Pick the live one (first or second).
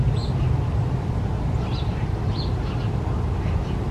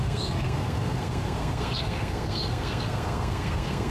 first